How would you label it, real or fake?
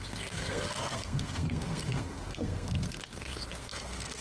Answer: fake